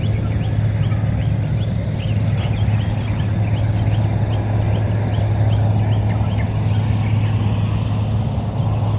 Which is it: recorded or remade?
recorded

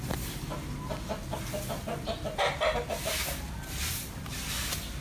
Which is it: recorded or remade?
recorded